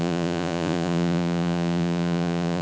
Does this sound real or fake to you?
fake